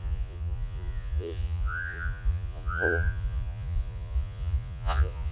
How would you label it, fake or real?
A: fake